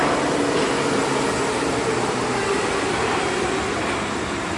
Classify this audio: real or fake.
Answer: real